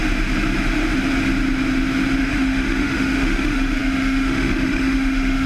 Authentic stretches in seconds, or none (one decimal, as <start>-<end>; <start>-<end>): 0.0-2.2